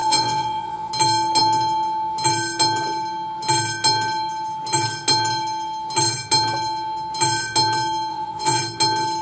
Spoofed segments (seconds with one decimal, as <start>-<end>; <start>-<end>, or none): 0.0-0.9; 8.1-8.6